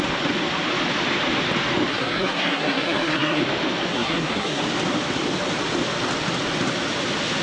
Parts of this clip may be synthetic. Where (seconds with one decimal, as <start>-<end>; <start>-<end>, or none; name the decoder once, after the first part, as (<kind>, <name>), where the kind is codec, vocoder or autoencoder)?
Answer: 1.9-3.4 (codec, SNAC); 3.9-4.6